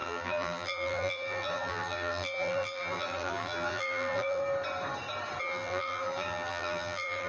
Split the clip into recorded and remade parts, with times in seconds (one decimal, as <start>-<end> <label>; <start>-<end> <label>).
0.0-4.4 remade; 4.4-5.4 recorded; 5.4-7.3 remade